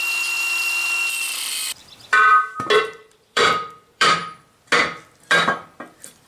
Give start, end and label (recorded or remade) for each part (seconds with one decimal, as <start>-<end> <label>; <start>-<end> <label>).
0.0-1.8 remade; 1.8-2.8 recorded; 2.8-4.2 remade; 4.2-5.3 recorded; 5.3-6.3 remade